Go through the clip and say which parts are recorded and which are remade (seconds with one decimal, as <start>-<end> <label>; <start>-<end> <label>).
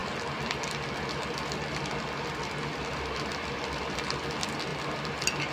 0.0-5.5 recorded